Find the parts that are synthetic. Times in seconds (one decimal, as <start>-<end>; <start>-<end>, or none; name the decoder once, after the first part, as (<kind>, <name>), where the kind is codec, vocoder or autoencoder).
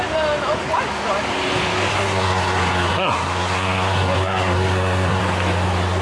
1.9-5.2 (codec, SNAC)